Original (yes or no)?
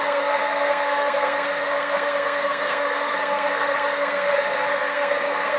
no